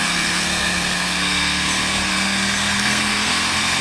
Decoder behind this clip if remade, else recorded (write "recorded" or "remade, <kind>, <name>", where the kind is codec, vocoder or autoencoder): remade, codec, SNAC